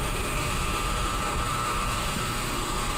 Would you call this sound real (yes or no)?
no